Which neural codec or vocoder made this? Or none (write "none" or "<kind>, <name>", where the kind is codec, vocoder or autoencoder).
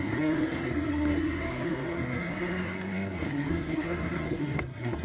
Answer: codec, SNAC